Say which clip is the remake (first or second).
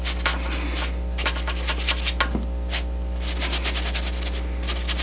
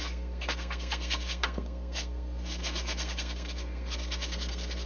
second